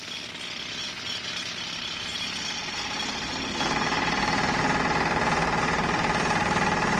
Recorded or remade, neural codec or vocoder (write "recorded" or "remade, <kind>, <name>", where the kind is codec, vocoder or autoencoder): recorded